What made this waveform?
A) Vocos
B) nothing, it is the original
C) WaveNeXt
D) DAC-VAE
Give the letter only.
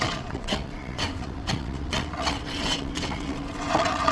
C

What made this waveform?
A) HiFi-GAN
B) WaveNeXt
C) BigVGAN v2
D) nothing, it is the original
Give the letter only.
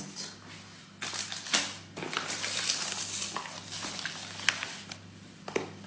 D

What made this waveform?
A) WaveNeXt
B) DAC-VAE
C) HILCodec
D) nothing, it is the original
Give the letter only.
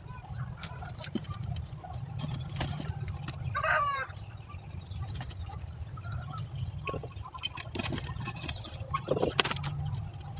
D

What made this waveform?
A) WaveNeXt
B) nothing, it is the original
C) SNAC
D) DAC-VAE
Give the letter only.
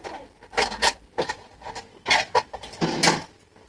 B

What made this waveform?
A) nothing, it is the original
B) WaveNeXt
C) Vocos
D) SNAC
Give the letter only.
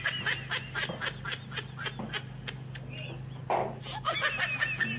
A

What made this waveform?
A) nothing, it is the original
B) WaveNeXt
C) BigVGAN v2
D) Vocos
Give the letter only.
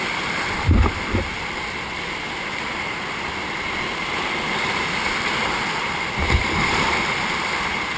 A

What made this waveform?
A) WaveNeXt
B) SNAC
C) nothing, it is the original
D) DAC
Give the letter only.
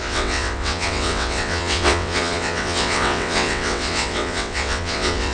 A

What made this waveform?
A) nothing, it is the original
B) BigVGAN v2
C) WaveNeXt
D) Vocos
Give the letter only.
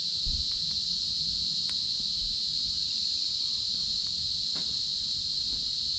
A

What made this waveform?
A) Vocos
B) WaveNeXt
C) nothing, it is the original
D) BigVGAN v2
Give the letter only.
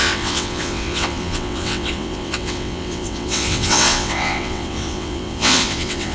B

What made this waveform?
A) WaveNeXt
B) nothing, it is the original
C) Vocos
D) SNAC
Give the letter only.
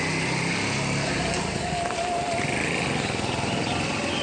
B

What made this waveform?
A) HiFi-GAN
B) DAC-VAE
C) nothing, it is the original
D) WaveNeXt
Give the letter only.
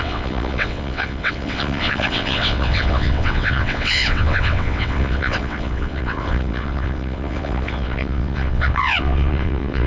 D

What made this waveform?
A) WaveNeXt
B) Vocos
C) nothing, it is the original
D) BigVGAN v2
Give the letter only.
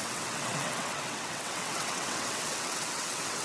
A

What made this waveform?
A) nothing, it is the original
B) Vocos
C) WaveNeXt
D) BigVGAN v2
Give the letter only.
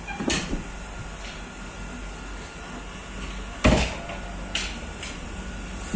A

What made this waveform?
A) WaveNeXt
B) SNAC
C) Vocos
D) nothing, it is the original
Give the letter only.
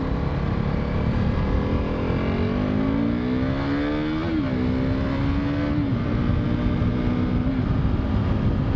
D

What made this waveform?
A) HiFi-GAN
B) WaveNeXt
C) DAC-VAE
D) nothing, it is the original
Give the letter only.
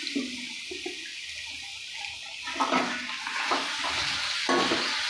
D